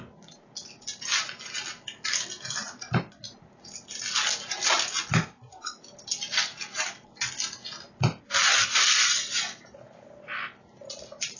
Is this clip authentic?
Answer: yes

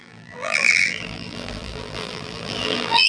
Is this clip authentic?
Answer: no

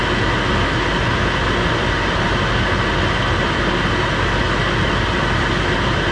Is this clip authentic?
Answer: yes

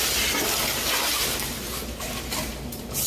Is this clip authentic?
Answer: no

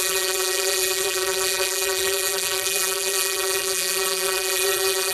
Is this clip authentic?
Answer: no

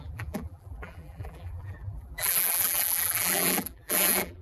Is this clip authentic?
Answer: no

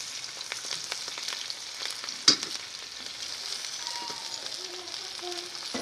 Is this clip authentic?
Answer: yes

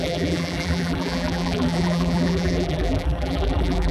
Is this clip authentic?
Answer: no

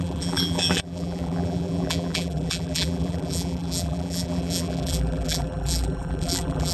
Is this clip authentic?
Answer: no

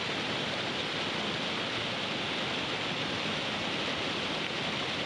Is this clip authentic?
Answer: yes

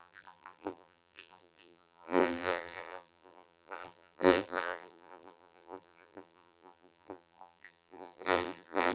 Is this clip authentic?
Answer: no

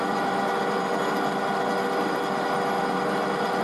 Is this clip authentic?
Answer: yes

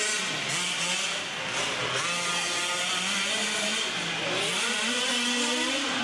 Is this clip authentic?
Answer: yes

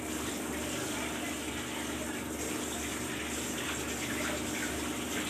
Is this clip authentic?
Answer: no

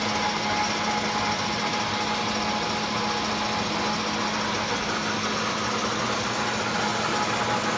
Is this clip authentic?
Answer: yes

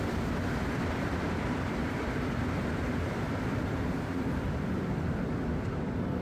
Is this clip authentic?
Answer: no